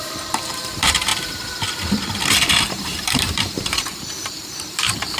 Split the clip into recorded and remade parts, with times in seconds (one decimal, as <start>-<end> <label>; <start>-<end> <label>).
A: 0.0-1.1 remade; 1.1-2.6 recorded; 2.6-5.2 remade